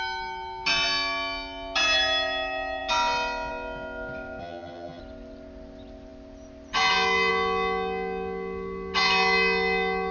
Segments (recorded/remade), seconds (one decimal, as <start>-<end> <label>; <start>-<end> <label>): 0.0-4.4 recorded; 4.4-5.0 remade; 5.0-10.1 recorded